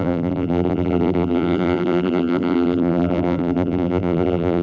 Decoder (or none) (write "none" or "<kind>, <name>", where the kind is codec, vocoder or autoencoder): vocoder, BigVGAN v2